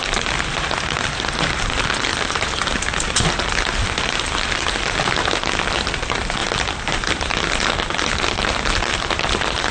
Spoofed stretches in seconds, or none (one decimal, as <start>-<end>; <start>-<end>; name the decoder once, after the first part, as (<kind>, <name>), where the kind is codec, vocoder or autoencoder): none